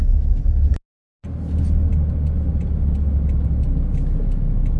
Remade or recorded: recorded